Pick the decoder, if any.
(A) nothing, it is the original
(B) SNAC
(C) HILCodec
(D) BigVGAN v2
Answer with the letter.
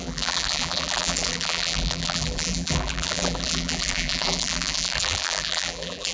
D